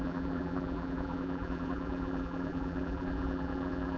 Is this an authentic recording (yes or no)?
no